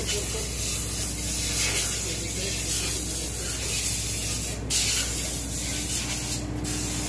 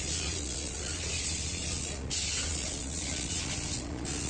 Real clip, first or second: first